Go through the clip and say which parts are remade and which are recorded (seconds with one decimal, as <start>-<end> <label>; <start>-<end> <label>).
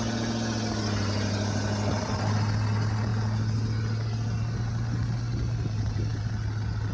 0.0-6.9 recorded